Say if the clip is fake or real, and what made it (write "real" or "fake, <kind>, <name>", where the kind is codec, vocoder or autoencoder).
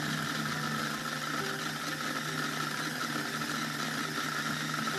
real